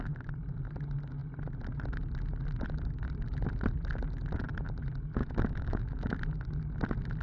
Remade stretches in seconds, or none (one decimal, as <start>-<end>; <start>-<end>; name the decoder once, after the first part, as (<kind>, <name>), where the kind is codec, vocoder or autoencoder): 5.2-6.2 (autoencoder, DAC-VAE)